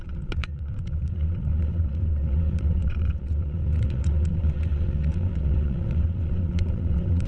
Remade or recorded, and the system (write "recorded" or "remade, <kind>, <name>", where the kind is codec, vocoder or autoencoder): remade, vocoder, WaveNeXt